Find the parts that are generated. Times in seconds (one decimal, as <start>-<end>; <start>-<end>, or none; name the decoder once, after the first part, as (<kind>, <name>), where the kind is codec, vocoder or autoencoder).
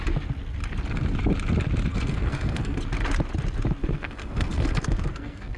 1.9-2.8 (codec, SNAC); 3.8-5.6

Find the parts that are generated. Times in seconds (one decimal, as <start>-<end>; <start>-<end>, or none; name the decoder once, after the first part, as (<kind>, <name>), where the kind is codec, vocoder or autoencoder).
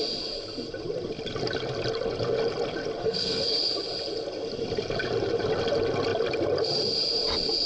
3.0-3.6 (codec, SNAC)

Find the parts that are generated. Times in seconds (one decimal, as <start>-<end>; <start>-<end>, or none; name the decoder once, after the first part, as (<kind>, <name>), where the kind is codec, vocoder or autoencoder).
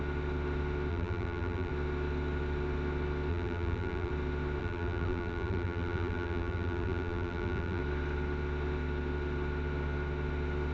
0.9-1.7 (vocoder, BigVGAN v2); 3.3-4.1; 4.6-7.8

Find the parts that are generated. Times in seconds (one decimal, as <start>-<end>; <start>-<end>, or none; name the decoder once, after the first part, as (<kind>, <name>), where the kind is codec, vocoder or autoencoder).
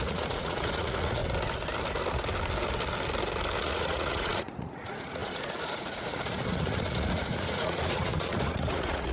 0.0-1.2 (vocoder, Vocos); 3.6-9.1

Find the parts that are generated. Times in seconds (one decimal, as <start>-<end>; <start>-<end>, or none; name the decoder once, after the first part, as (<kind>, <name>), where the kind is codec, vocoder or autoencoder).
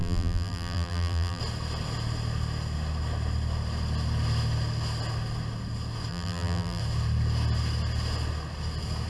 0.0-1.4 (vocoder, BigVGAN v2); 6.1-6.8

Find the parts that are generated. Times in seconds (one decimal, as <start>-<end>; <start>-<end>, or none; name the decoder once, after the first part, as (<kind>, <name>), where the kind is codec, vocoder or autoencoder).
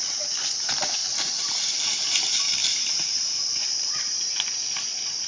1.0-1.5 (vocoder, BigVGAN v2); 2.6-4.6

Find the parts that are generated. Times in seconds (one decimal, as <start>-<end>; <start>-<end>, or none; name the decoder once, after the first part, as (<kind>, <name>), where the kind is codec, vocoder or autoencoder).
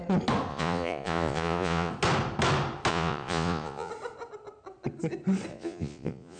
0.5-1.9 (vocoder, Vocos); 2.9-3.9; 5.5-6.4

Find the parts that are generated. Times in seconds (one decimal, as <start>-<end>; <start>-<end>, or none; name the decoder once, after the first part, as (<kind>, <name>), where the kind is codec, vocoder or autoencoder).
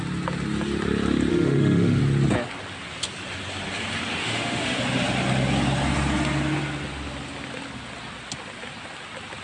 1.3-2.0 (autoencoder, DAC-VAE); 4.2-4.8